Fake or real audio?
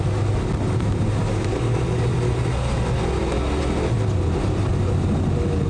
real